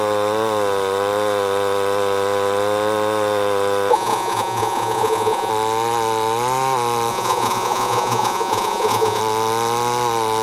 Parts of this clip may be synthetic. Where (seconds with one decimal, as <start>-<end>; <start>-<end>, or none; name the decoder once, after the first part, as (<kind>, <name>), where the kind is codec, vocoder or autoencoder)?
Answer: 3.9-5.5 (vocoder, Vocos); 7.1-9.2